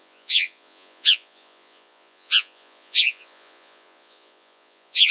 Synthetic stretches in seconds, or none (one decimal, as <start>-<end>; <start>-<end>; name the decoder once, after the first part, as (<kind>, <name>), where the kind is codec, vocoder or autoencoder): 0.0-5.1 (vocoder, Vocos)